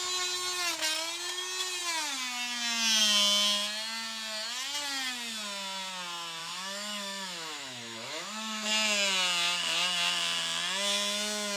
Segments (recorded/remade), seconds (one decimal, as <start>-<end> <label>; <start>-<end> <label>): 0.0-6.4 recorded; 6.4-8.7 remade; 8.7-11.6 recorded